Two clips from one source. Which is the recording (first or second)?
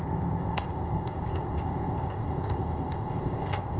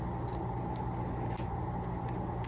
second